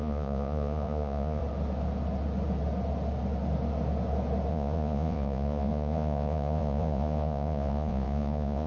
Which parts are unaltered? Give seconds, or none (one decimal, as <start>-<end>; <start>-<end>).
1.4-4.5